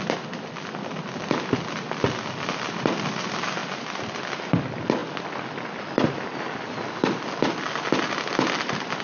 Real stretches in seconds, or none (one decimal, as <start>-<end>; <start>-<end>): 0.0-9.0